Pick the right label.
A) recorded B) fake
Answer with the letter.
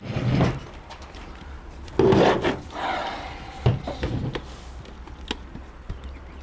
A